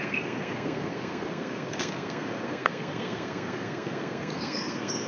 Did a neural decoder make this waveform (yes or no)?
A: yes